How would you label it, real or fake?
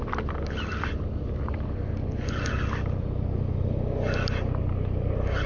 real